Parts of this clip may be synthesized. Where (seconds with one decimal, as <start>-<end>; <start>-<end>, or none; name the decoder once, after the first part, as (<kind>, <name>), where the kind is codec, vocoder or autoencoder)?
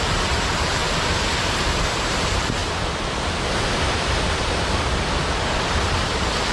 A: 0.0-0.8 (vocoder, BigVGAN v2); 1.4-2.6; 5.6-6.5